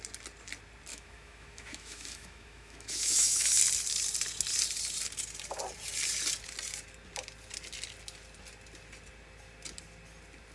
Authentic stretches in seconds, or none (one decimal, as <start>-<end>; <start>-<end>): 0.0-0.9; 3.6-10.5